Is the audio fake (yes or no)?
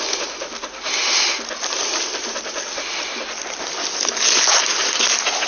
no